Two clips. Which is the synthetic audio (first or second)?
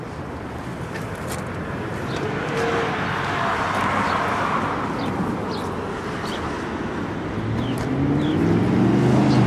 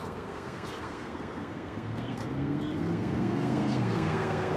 second